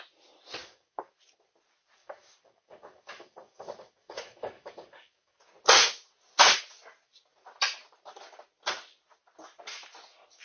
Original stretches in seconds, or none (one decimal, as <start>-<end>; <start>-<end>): 0.0-0.6; 1.1-2.0; 5.4-10.4

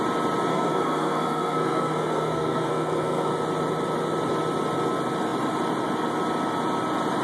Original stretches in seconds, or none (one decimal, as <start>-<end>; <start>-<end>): 0.0-0.5; 3.3-7.2

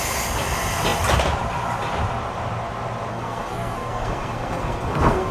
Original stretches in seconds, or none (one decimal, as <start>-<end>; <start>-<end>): 0.0-3.1

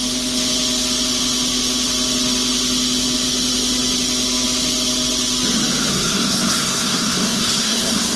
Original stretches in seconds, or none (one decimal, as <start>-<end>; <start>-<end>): 0.0-5.9

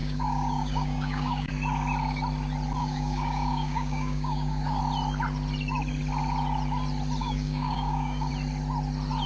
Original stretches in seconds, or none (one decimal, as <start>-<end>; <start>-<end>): 1.5-2.8; 4.8-7.2; 8.3-9.3

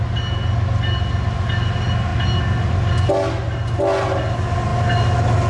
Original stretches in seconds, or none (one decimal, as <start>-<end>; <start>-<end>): 0.0-5.5

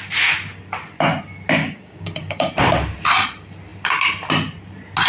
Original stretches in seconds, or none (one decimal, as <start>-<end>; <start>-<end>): 0.0-1.6; 2.5-5.1